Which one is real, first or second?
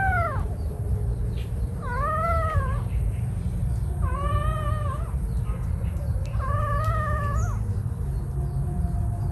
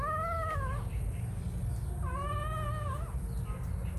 second